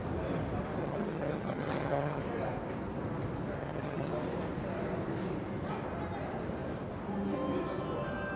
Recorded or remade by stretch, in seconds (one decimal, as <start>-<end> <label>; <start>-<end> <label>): 0.0-0.8 recorded; 0.8-2.2 remade; 2.2-3.6 recorded; 3.6-4.1 remade; 4.1-8.4 recorded